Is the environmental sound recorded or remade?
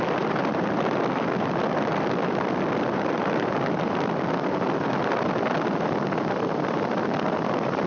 remade